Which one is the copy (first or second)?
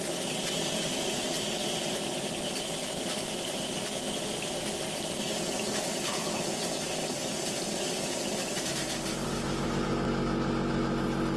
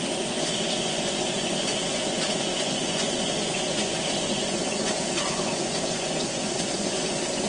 second